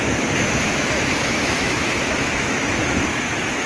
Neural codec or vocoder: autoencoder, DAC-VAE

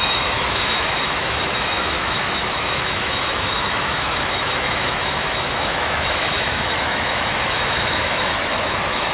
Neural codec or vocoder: autoencoder, DAC-VAE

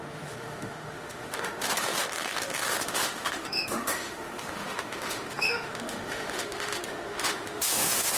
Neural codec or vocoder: autoencoder, DAC-VAE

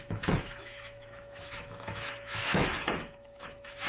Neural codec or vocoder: autoencoder, DAC-VAE